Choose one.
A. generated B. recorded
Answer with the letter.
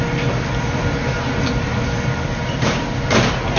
B